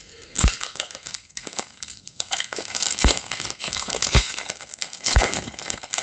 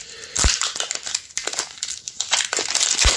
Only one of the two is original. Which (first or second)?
second